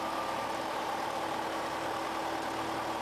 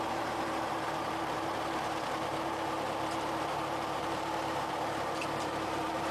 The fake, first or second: second